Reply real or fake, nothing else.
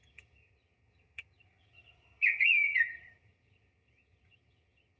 fake